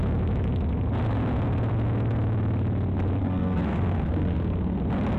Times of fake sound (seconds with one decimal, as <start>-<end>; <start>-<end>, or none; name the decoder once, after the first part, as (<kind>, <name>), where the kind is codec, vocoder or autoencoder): 3.2-4.8 (codec, SNAC)